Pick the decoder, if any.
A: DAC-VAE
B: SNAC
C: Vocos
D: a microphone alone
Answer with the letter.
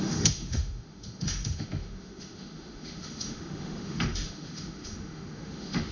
A